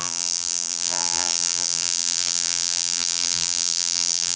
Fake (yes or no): yes